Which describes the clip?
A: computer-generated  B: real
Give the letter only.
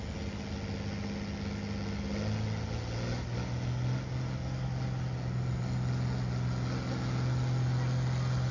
B